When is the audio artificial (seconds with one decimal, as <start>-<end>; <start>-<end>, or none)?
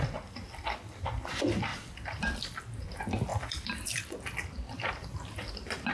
1.7-2.6; 3.3-5.5